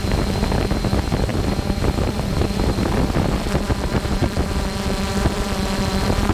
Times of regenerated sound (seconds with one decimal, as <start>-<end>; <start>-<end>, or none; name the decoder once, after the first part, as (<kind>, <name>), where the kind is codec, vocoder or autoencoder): 1.3-4.6 (vocoder, BigVGAN v2)